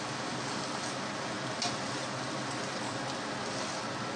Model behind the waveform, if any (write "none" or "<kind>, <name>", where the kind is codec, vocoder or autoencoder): none